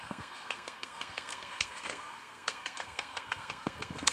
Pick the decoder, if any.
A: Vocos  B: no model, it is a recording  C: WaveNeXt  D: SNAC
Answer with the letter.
D